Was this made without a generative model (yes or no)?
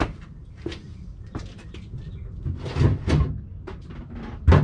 yes